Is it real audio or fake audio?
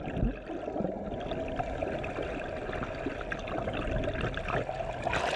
real